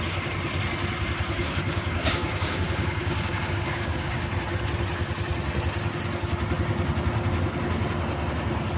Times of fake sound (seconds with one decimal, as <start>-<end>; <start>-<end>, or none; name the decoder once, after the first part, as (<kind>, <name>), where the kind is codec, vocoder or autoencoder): 1.4-4.3 (codec, DAC)